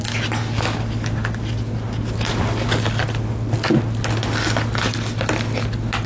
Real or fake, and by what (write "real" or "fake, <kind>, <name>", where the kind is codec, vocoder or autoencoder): real